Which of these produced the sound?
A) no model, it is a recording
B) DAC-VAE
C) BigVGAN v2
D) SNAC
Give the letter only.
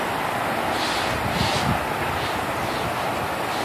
A